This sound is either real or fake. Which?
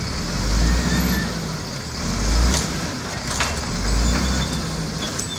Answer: real